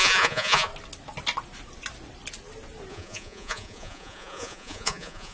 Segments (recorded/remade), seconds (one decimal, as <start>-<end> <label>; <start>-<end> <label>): 0.0-0.7 remade; 0.7-2.9 recorded; 2.9-5.3 remade